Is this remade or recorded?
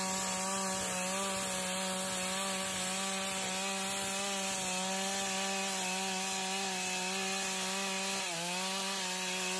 recorded